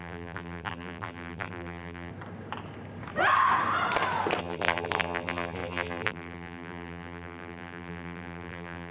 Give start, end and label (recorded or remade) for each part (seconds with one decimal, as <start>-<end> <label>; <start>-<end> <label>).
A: 0.0-2.1 remade; 2.1-4.4 recorded; 4.4-8.9 remade